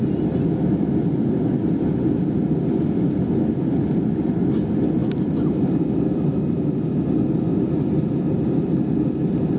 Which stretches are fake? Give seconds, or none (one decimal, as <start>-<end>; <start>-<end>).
none